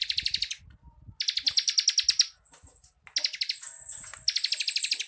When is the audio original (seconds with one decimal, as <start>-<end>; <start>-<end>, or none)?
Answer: 0.0-5.1